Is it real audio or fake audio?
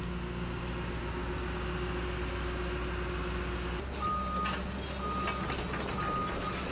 real